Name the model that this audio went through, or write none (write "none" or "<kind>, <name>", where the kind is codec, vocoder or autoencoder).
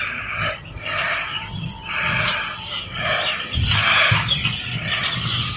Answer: none